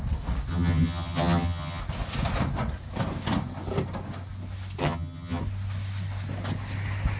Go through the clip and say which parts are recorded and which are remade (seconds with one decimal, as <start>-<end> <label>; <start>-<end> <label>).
0.0-0.5 recorded; 0.5-1.8 remade; 1.8-4.8 recorded; 4.8-5.4 remade; 5.4-7.2 recorded